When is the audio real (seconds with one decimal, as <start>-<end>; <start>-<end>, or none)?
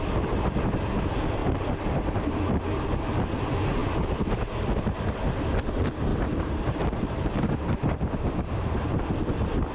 0.0-6.1; 9.0-9.7